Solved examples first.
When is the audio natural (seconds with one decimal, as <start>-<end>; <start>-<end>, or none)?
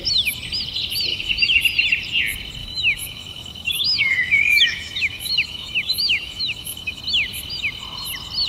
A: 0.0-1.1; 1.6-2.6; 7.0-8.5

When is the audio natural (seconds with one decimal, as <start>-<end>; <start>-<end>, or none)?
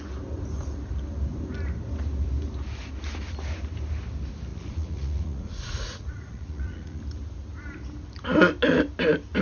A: 0.0-4.5; 7.0-9.4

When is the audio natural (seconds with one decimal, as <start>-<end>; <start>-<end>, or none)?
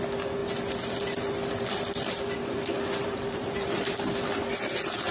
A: 0.0-3.0; 3.8-5.1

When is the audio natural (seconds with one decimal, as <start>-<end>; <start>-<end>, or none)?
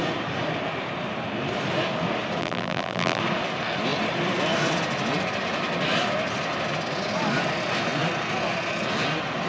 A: 0.0-2.4; 3.2-9.5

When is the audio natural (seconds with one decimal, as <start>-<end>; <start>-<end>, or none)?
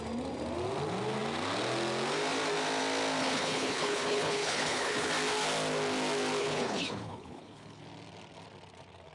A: 0.0-3.2; 5.1-6.4; 7.8-9.1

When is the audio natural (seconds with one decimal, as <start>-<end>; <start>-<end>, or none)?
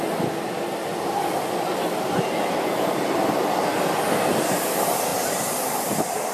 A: 0.0-6.3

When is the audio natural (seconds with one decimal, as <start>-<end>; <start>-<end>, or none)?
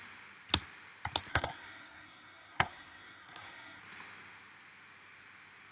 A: 0.0-1.3; 3.8-5.7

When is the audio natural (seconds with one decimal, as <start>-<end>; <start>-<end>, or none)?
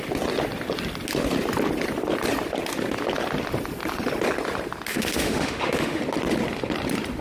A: 0.0-4.9; 6.0-7.2